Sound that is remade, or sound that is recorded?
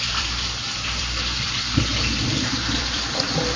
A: remade